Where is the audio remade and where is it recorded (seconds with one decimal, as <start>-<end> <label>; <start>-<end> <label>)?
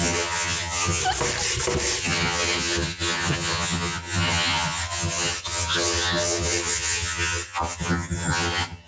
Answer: 0.0-1.0 remade; 1.0-2.0 recorded; 2.0-8.9 remade